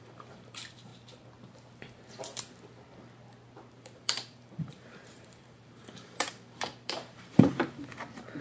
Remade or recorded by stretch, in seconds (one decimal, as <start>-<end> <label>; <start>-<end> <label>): 0.0-0.9 remade; 0.9-3.7 recorded; 3.7-7.6 remade; 7.6-8.4 recorded

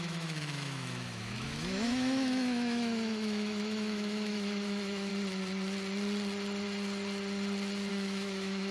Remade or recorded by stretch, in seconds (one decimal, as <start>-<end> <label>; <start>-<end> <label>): 0.0-5.1 remade; 5.1-7.9 recorded; 7.9-8.7 remade

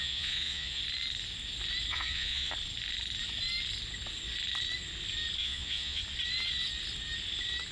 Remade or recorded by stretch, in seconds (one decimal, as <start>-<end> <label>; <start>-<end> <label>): 0.0-0.8 remade; 0.8-1.9 recorded; 1.9-2.5 remade; 2.5-5.4 recorded; 5.4-6.0 remade; 6.0-7.7 recorded

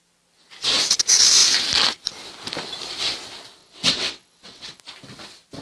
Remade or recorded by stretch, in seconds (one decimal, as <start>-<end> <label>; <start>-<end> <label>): 0.0-3.6 recorded; 3.6-4.8 remade; 4.8-5.6 recorded